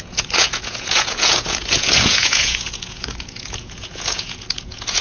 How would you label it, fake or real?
fake